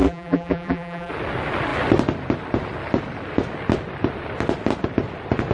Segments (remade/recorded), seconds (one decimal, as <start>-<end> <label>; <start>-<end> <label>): 0.0-1.1 remade; 1.1-5.5 recorded